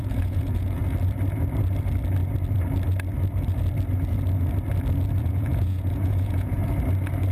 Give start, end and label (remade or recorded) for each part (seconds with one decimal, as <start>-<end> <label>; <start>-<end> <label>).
0.0-0.8 remade; 0.8-5.2 recorded; 5.2-6.6 remade; 6.6-7.3 recorded

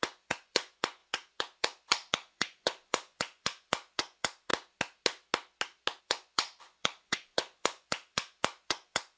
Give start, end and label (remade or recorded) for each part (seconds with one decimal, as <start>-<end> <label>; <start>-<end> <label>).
0.0-4.5 remade; 4.5-6.0 recorded; 6.0-9.2 remade

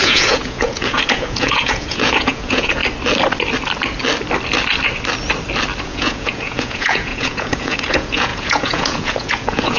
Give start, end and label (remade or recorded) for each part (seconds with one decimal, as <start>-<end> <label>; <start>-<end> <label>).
0.0-2.8 remade; 2.8-5.8 recorded; 5.8-9.8 remade

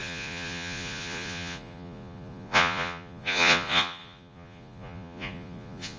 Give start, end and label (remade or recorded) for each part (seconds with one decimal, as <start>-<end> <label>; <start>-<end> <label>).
0.0-6.0 remade

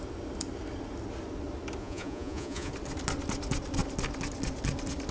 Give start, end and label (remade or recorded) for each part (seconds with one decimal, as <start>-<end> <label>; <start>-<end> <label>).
0.0-1.8 recorded; 1.8-2.7 remade; 2.7-5.1 recorded

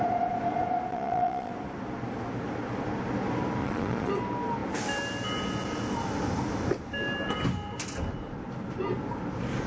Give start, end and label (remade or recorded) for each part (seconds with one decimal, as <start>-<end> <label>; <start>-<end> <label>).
0.0-0.9 recorded; 0.9-1.5 remade; 1.5-3.6 recorded; 3.6-4.1 remade; 4.1-9.7 recorded

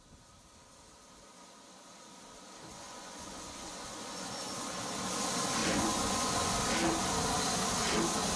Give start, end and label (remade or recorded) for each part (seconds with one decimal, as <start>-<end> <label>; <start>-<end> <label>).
0.0-2.7 recorded; 2.7-4.7 remade; 4.7-5.6 recorded; 5.6-6.6 remade; 6.6-8.4 recorded